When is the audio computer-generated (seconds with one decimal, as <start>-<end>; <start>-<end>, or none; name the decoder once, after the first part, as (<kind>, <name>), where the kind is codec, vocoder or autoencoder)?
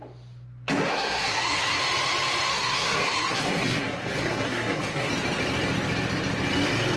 0.9-1.8 (codec, SNAC); 2.5-5.1